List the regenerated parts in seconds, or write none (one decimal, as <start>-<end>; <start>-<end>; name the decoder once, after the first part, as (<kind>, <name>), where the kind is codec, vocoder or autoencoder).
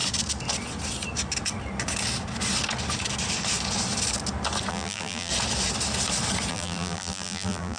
4.7-5.3 (vocoder, BigVGAN v2); 6.5-7.8